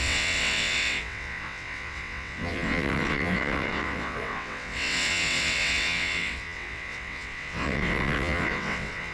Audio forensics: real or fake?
fake